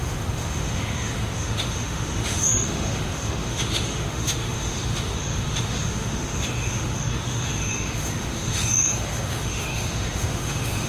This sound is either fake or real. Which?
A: fake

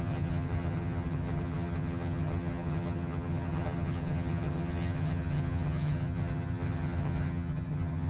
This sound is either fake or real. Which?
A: fake